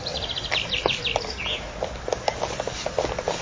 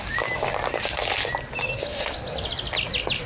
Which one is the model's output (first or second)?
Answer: first